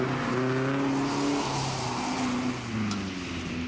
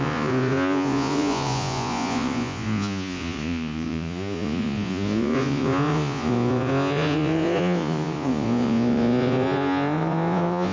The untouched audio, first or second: first